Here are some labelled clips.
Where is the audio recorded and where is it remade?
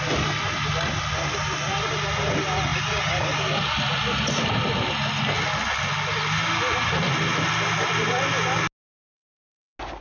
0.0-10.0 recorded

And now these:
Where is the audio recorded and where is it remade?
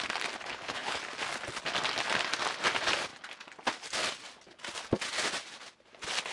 0.0-0.5 recorded; 0.5-1.0 remade; 1.0-6.3 recorded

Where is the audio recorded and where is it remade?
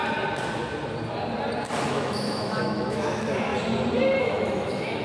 0.0-1.9 recorded; 1.9-3.5 remade; 3.5-4.2 recorded; 4.2-5.0 remade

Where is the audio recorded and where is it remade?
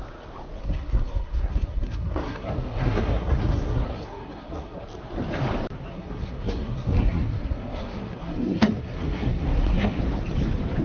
0.0-0.6 recorded; 0.6-4.8 remade; 4.8-5.9 recorded; 5.9-10.0 remade; 10.0-10.8 recorded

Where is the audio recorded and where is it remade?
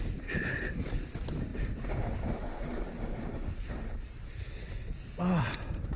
0.0-1.5 recorded; 1.5-4.3 remade; 4.3-6.0 recorded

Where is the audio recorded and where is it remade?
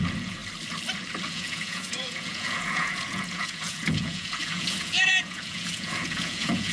0.0-0.4 remade; 0.4-1.3 recorded; 1.3-6.7 remade